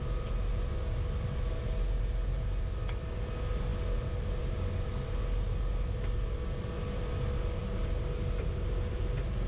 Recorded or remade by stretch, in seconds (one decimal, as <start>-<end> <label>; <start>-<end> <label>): 0.0-9.5 recorded